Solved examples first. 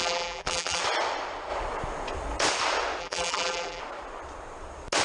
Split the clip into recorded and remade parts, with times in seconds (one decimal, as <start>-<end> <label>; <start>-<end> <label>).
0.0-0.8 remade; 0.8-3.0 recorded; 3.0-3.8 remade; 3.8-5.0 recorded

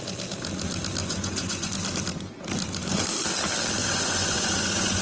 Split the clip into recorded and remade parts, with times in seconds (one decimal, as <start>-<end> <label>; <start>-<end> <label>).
0.0-1.0 recorded; 1.0-1.7 remade; 1.7-3.8 recorded; 3.8-5.0 remade

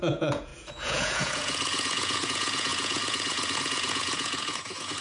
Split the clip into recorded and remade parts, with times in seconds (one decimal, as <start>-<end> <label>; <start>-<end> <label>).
0.0-5.0 remade

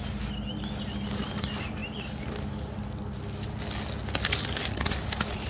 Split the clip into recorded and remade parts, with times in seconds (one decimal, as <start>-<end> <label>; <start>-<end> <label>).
0.0-5.5 recorded

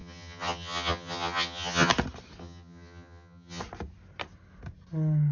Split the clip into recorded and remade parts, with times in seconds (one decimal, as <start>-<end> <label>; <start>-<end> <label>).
0.0-1.9 remade; 1.9-2.4 recorded; 2.4-3.6 remade; 3.6-5.3 recorded